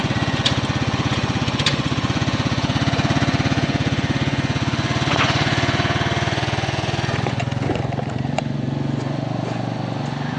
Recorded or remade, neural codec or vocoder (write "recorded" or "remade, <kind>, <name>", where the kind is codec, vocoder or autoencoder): remade, vocoder, Vocos